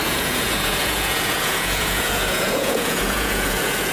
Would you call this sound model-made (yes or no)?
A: yes